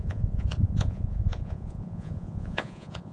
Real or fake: fake